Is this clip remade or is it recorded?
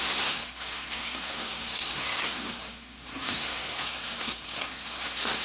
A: remade